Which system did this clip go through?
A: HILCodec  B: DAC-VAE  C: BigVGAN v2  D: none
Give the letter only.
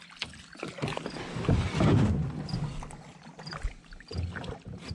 D